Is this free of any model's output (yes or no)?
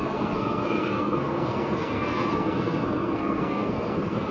no